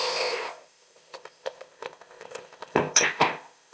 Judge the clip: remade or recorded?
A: remade